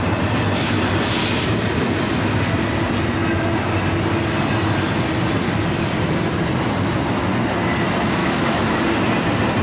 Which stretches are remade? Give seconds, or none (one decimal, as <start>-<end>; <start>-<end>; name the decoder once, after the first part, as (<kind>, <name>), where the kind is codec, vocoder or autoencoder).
8.2-8.8 (autoencoder, DAC-VAE)